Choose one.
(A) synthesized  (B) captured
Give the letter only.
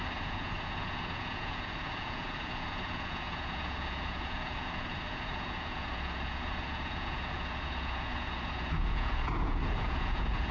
A